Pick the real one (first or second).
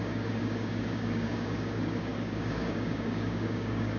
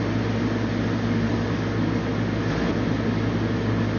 second